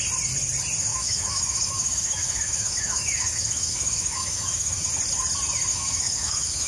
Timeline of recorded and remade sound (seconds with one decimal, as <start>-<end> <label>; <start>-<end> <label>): 0.0-0.9 recorded; 0.9-4.9 remade; 4.9-5.7 recorded; 5.7-6.7 remade